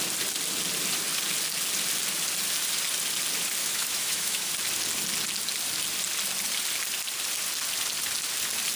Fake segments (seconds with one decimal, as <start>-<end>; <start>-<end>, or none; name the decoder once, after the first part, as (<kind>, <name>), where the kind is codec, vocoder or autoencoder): 3.6-4.5 (autoencoder, DAC-VAE)